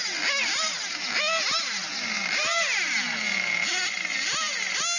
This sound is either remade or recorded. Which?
recorded